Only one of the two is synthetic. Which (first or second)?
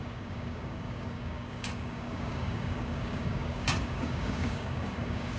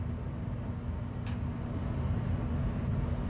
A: first